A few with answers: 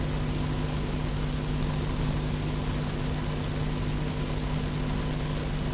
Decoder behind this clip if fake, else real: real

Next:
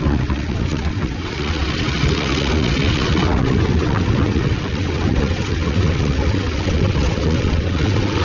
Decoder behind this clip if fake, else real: fake, vocoder, WaveNeXt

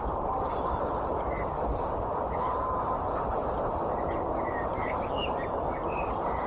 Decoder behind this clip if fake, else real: real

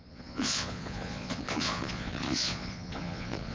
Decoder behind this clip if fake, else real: fake, vocoder, Vocos